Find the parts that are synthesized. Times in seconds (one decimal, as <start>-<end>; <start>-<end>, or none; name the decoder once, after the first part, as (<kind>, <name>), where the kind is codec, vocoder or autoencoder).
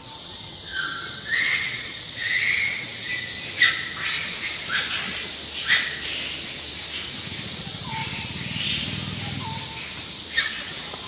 0.0-3.3 (vocoder, WaveNeXt); 7.3-8.0; 10.4-11.1